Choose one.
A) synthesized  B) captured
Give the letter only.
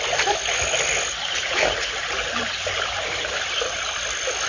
B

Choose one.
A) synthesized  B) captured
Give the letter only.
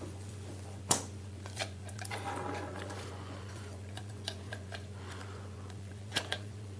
A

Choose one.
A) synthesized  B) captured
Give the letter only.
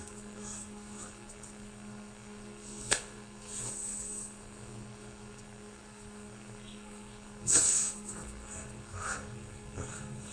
A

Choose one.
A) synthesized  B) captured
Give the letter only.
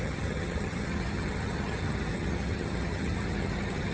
A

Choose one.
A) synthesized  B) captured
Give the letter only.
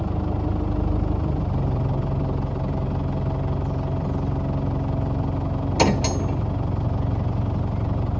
B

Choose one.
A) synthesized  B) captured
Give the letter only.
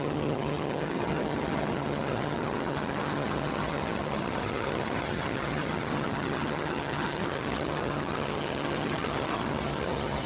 A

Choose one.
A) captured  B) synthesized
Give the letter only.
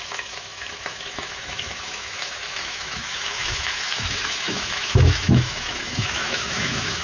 B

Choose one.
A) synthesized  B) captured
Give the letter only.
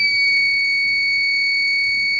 A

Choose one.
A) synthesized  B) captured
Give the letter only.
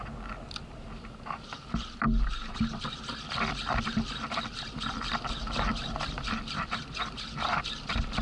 B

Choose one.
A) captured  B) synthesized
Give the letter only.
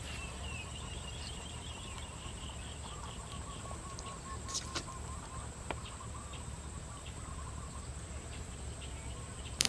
B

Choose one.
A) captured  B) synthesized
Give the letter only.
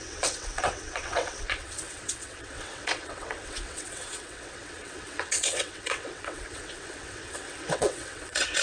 B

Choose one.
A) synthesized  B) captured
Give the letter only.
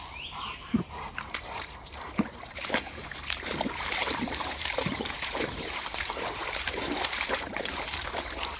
A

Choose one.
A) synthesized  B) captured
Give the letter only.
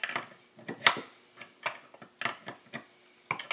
B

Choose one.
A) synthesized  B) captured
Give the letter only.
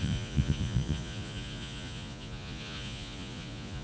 A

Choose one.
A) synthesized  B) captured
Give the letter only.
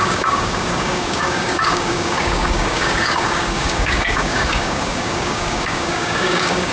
A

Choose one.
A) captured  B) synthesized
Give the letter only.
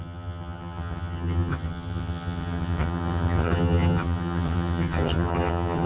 B